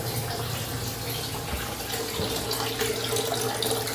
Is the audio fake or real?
real